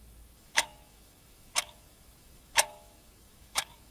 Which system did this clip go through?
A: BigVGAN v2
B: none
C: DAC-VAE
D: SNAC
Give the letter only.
C